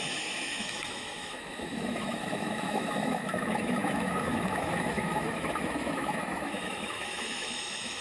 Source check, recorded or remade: remade